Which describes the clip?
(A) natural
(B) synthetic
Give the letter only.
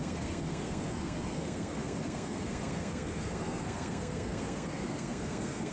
B